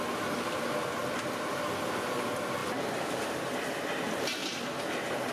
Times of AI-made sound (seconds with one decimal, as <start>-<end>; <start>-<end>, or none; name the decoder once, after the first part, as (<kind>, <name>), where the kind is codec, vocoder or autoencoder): none